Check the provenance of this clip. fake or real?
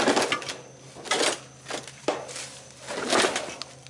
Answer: real